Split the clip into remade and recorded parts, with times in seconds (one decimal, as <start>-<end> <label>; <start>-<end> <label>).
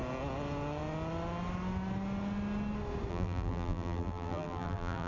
0.0-3.1 recorded; 3.1-5.1 remade